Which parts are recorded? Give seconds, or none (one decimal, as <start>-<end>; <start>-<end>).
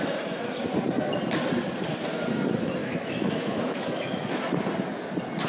0.0-2.8; 4.4-5.5